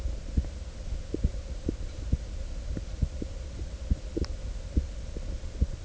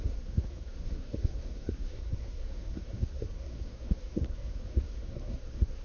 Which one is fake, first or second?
second